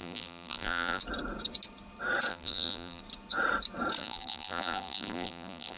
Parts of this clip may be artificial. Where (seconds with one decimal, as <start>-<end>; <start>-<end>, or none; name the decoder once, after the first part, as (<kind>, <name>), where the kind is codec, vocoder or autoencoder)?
0.0-1.0 (vocoder, BigVGAN v2); 2.3-3.0; 4.0-5.8